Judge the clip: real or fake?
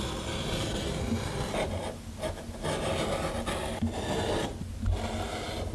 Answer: real